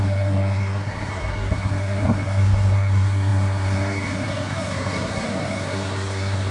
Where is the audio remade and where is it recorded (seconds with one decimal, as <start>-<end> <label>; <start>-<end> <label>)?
0.0-6.5 remade